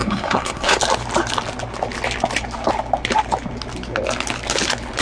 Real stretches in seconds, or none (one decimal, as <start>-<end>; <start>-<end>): 0.8-5.0